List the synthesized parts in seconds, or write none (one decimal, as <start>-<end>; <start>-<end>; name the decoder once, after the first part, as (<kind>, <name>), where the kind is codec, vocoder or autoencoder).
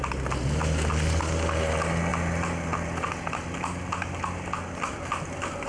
none